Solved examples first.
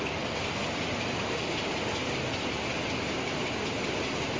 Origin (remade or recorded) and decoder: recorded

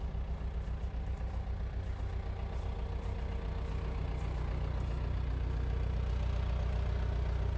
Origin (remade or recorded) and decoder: recorded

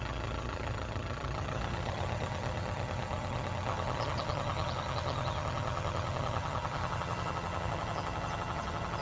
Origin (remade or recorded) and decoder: remade, vocoder, HiFi-GAN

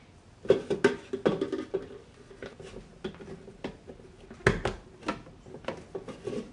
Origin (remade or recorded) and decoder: recorded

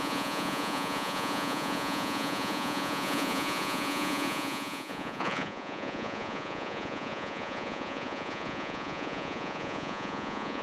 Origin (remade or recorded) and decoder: remade, vocoder, Vocos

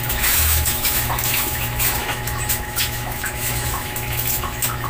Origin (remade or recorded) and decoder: remade, autoencoder, DAC-VAE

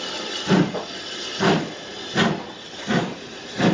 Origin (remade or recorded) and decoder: recorded